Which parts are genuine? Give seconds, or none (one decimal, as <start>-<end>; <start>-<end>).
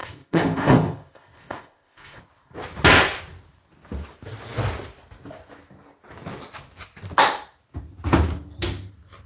2.2-9.3